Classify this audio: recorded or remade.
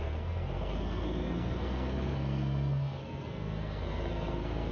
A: remade